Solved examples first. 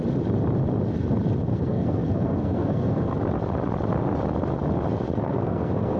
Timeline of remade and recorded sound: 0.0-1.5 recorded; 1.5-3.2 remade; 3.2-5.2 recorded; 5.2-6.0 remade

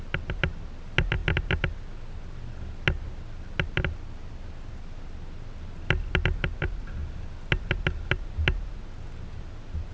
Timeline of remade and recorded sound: 0.0-9.9 recorded

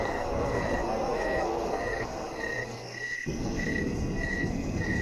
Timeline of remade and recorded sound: 0.0-5.0 remade

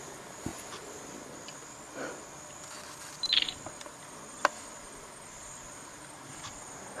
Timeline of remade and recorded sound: 0.0-5.4 recorded; 5.4-6.3 remade; 6.3-7.0 recorded

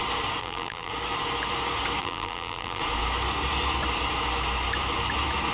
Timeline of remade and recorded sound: 0.0-0.4 recorded; 0.4-0.9 remade; 0.9-2.0 recorded; 2.0-2.8 remade; 2.8-5.5 recorded